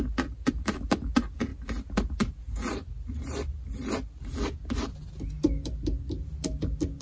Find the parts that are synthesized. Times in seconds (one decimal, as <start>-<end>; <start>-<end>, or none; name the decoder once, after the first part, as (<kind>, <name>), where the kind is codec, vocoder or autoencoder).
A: none